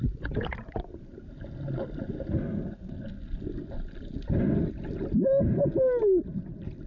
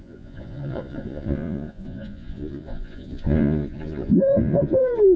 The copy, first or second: second